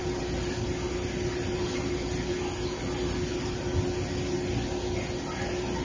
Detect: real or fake real